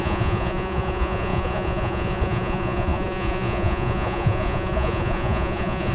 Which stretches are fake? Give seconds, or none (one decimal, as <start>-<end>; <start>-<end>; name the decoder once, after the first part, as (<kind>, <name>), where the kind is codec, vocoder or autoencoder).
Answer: 0.0-5.9 (vocoder, Vocos)

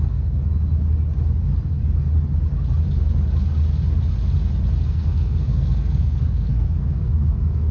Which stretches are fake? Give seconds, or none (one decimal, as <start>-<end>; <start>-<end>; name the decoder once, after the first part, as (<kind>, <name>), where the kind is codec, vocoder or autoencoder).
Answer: 0.0-0.4 (codec, SNAC); 4.8-7.7

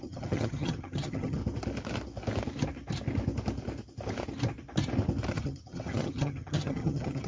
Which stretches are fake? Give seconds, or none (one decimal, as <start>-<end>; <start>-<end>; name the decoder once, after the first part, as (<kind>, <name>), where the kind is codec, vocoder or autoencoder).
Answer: 0.0-1.4 (vocoder, HiFi-GAN); 5.3-7.3

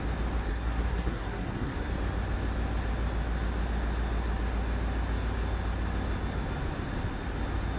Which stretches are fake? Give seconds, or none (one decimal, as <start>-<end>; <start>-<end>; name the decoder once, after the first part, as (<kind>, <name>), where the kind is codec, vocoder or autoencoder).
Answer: 0.5-1.9 (codec, SNAC)

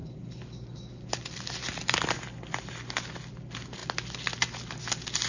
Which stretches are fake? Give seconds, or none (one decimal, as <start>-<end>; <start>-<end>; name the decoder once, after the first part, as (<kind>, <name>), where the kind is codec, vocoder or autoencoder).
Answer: none